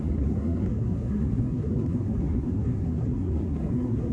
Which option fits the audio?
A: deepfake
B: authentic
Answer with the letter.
A